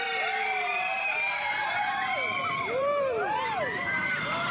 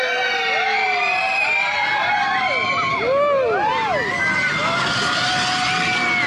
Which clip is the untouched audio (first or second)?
second